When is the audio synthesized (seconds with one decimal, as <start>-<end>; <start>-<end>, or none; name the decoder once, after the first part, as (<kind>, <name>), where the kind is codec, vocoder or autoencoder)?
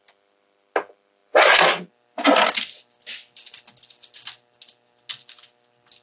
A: none